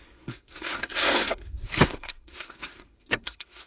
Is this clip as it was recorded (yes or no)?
no